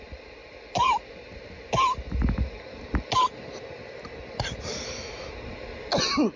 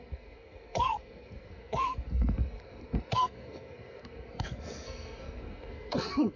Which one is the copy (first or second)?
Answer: second